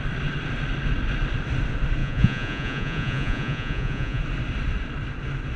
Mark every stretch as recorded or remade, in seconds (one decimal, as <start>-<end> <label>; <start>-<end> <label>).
0.0-2.0 recorded; 2.0-4.2 remade; 4.2-5.6 recorded